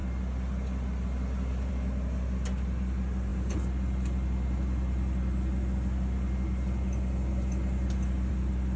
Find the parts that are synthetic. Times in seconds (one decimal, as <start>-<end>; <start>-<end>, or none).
none